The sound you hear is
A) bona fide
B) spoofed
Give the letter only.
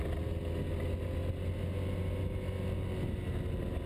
A